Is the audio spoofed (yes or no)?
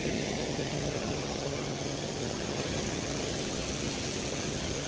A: yes